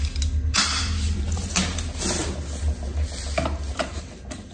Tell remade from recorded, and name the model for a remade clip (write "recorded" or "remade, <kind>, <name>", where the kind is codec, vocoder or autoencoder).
recorded